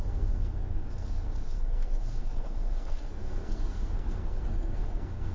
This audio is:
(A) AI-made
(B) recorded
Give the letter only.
A